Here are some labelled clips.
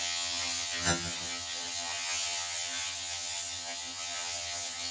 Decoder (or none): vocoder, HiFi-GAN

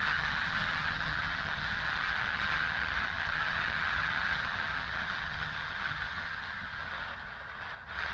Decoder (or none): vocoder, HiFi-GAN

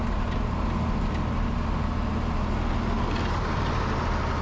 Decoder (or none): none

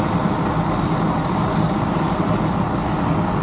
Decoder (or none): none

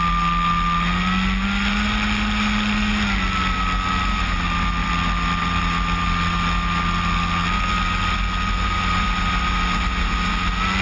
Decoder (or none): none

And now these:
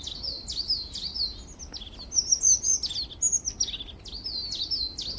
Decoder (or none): none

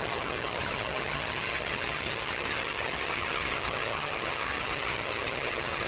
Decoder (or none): vocoder, HiFi-GAN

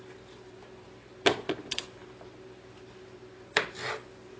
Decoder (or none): none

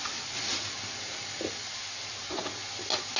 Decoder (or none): none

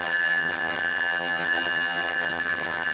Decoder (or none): vocoder, HiFi-GAN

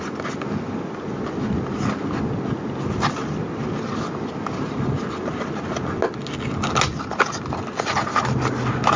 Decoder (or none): none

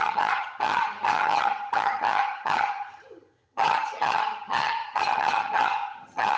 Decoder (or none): vocoder, HiFi-GAN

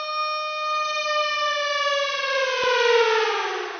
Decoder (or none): none